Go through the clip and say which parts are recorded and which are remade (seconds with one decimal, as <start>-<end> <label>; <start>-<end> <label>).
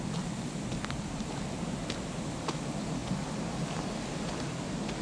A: 0.0-5.0 recorded